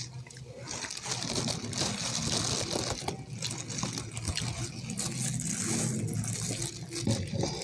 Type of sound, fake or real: real